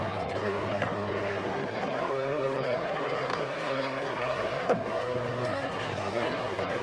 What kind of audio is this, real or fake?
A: fake